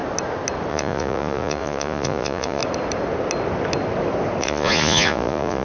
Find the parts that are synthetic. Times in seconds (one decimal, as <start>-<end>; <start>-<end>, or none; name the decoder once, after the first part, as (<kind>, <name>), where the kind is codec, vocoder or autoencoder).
0.7-2.6 (vocoder, Vocos); 4.4-5.6